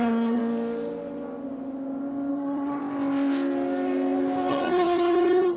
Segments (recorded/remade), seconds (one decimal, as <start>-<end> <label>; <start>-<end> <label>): 0.0-0.4 remade; 0.4-2.3 recorded; 2.3-2.8 remade; 2.8-4.5 recorded; 4.5-5.6 remade